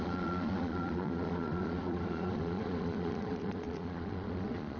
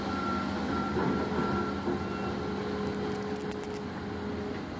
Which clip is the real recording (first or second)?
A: second